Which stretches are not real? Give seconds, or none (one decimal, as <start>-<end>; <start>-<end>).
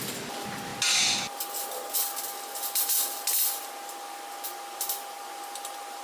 none